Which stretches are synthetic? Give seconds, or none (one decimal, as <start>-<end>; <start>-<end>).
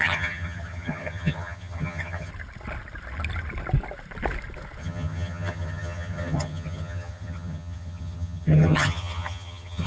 0.0-2.3; 4.8-9.9